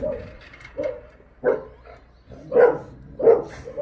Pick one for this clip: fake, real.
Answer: real